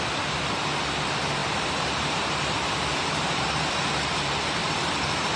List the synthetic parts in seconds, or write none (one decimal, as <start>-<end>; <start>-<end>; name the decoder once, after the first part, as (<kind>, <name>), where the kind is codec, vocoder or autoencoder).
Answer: 1.4-3.7 (vocoder, BigVGAN v2); 4.6-5.4